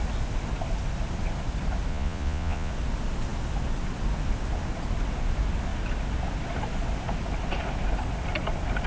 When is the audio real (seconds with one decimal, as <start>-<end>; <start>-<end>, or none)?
0.0-1.9; 2.7-8.9